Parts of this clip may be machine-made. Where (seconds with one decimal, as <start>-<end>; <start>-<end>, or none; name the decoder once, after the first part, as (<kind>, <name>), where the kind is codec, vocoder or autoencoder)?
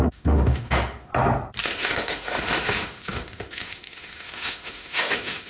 0.0-1.1 (autoencoder, DAC-VAE); 1.6-5.5